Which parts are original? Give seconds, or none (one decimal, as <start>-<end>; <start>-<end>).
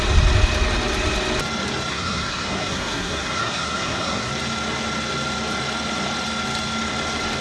0.0-1.9; 4.3-7.4